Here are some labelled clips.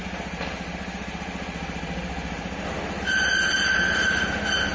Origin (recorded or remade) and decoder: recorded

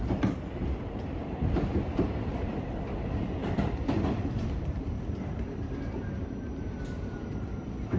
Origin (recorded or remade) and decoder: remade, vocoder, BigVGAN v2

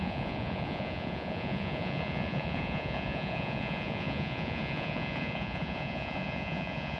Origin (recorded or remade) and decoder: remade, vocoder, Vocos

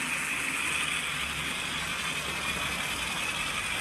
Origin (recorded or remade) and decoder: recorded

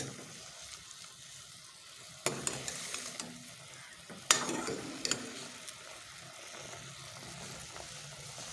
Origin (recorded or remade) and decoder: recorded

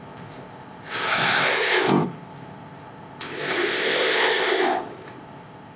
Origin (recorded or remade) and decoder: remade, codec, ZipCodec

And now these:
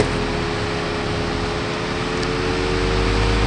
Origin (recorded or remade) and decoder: recorded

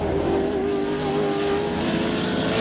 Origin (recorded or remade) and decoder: recorded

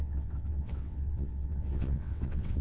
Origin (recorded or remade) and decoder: remade, vocoder, WaveNeXt